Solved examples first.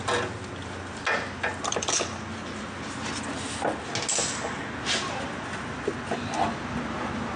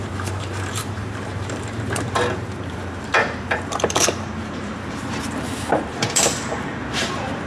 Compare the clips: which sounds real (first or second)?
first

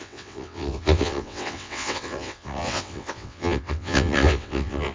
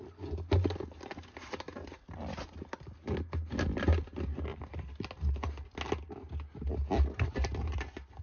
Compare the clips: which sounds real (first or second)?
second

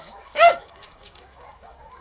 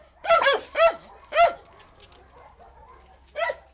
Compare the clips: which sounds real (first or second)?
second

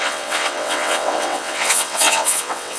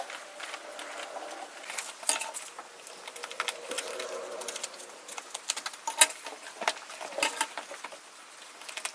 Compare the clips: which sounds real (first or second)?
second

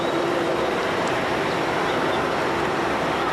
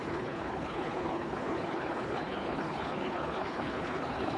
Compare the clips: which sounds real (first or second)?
first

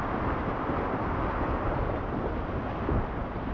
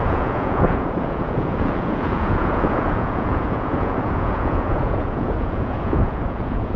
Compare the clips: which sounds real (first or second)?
first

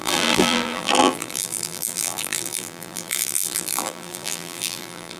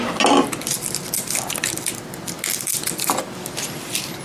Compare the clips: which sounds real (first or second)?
second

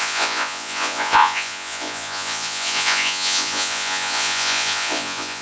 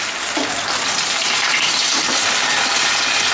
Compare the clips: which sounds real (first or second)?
second